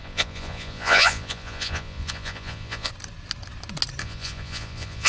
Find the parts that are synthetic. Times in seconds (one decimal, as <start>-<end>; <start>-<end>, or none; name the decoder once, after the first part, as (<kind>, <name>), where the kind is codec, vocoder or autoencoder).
0.0-2.9 (vocoder, Vocos); 4.0-5.1